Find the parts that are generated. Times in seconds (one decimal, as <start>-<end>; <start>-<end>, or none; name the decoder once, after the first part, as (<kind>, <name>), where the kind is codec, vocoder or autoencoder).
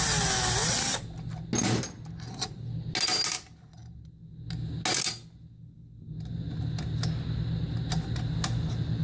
none